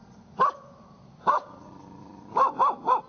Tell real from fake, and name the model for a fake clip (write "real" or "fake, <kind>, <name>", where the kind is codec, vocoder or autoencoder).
fake, vocoder, BigVGAN v2